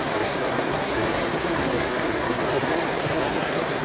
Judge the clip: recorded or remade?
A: remade